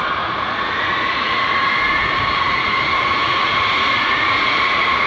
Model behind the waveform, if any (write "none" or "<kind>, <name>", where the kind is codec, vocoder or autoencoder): vocoder, Vocos